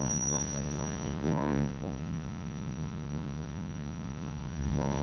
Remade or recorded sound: remade